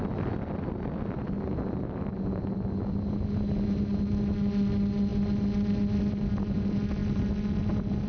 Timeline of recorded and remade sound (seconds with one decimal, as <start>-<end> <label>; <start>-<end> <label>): 0.0-8.1 recorded